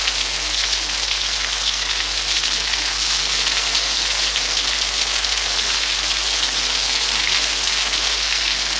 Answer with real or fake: fake